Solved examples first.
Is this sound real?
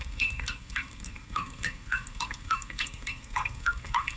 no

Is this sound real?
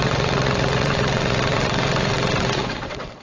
no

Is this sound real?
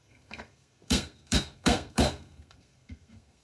no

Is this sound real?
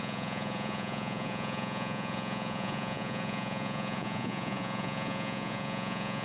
no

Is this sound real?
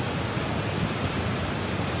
yes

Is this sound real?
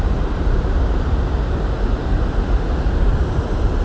yes